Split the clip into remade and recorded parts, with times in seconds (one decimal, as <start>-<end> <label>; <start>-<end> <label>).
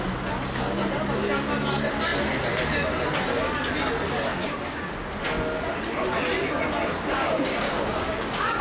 0.0-4.3 recorded; 4.3-5.1 remade; 5.1-6.9 recorded; 6.9-8.6 remade